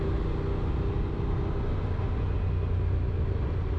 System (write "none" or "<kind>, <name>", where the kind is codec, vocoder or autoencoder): none